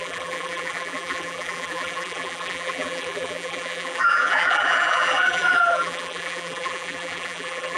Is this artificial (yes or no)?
yes